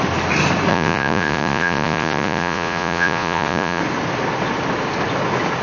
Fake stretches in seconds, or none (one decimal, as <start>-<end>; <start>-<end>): 0.7-3.8